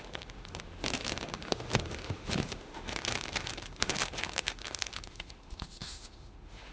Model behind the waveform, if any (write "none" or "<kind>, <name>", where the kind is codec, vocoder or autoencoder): autoencoder, DAC-VAE